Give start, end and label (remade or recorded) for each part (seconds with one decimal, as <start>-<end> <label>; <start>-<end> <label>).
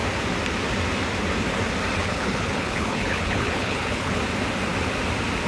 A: 0.0-2.0 recorded; 2.0-4.2 remade; 4.2-5.5 recorded